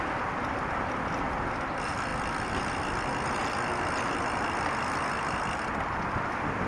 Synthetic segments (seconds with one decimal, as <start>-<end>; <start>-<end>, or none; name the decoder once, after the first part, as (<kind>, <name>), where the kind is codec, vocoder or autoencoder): none